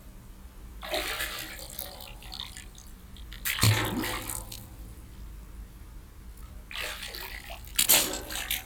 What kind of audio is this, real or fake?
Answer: real